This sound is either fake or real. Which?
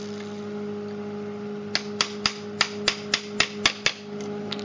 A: real